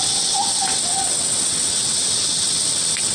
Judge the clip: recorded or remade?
remade